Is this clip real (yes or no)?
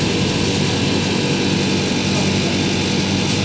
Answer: yes